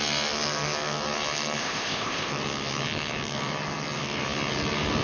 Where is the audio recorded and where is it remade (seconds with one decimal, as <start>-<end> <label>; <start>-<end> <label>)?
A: 0.0-1.6 recorded; 1.6-2.3 remade; 2.3-5.0 recorded